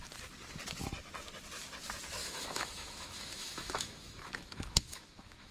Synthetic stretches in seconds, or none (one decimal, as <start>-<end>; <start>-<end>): 2.2-5.5